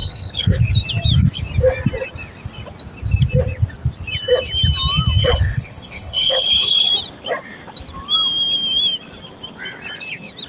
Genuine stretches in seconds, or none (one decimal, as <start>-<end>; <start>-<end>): 0.7-5.2; 6.9-10.5

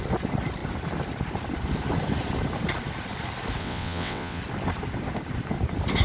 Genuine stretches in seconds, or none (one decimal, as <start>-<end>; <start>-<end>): 0.0-3.6; 4.4-6.0

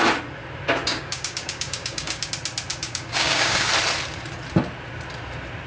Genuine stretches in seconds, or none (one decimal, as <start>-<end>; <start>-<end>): 0.0-0.9; 2.3-2.7; 3.7-5.7